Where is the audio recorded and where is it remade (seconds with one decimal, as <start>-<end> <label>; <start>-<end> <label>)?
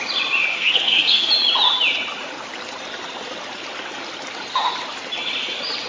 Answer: 0.0-0.5 recorded; 0.5-1.3 remade; 1.3-5.9 recorded